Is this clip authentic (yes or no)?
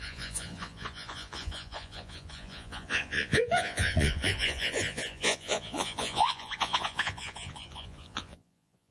no